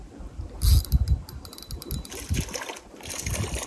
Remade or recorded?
recorded